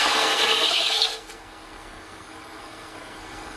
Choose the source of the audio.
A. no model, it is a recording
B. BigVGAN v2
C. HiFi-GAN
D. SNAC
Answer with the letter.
D